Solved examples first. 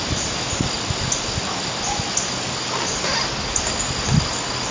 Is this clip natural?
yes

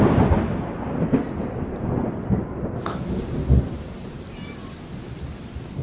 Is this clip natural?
yes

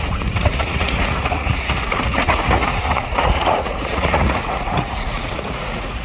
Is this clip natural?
no